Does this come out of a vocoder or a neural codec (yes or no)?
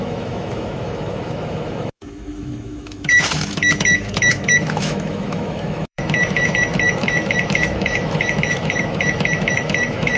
yes